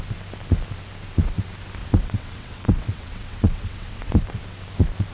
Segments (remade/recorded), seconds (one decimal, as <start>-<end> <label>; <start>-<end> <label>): 0.0-1.8 recorded; 1.8-4.1 remade; 4.1-5.1 recorded